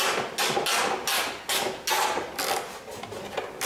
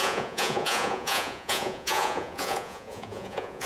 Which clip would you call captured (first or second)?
first